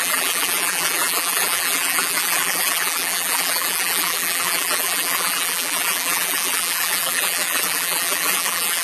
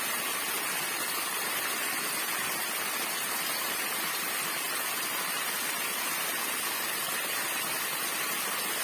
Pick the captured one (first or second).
second